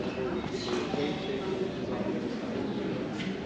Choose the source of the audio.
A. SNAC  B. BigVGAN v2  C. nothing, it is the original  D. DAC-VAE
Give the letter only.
C